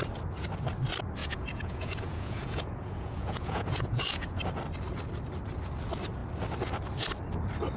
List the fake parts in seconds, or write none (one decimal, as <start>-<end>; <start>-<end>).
1.2-4.4